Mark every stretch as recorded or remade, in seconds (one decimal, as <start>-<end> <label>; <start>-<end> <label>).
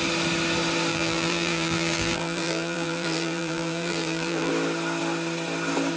0.0-0.9 recorded; 0.9-4.5 remade; 4.5-6.0 recorded